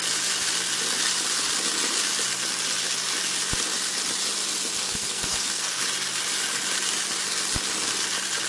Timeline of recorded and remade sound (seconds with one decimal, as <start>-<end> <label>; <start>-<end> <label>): 0.0-4.8 recorded; 4.8-5.8 remade; 5.8-8.5 recorded